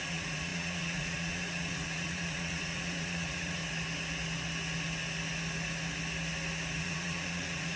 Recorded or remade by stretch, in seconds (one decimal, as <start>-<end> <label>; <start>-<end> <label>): 0.0-3.6 remade; 3.6-6.8 recorded; 6.8-7.8 remade

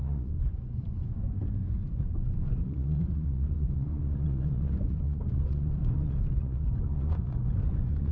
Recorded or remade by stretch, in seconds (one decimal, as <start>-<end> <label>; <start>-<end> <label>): 0.0-8.1 remade

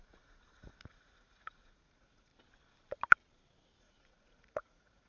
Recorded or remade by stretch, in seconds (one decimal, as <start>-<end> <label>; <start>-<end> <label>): 0.0-2.3 remade; 2.3-3.8 recorded; 3.8-5.1 remade

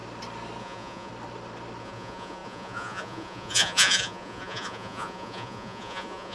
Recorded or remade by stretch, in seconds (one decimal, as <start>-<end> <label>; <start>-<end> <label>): 0.0-0.6 recorded; 0.6-1.1 remade; 1.1-1.8 recorded; 1.8-6.3 remade